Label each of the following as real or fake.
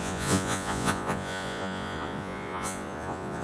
fake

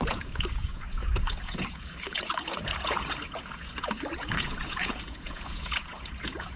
fake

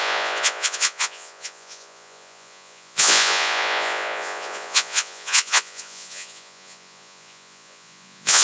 fake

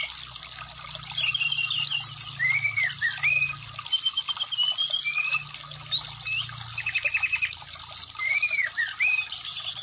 real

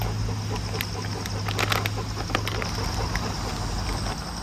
real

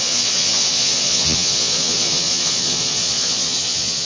fake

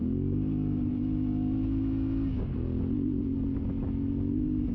real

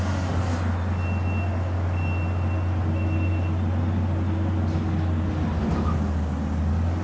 real